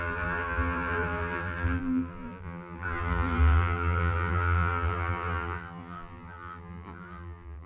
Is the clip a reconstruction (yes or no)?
yes